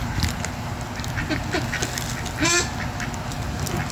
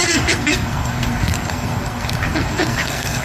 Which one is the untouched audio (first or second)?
first